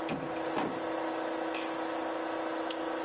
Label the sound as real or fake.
real